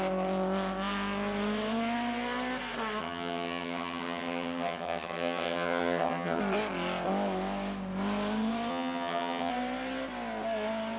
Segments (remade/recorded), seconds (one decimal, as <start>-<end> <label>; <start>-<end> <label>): 0.0-3.0 recorded; 3.0-6.4 remade; 6.4-8.7 recorded; 8.7-9.5 remade; 9.5-11.0 recorded